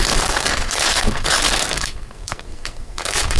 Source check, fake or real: fake